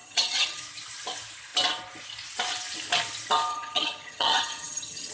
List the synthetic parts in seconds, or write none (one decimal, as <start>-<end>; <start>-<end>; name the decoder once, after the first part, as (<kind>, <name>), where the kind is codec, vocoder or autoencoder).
0.0-0.6 (vocoder, HiFi-GAN); 3.5-5.1